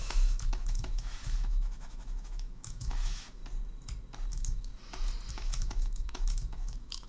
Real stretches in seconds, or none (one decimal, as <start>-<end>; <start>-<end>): 3.4-4.3; 4.7-5.3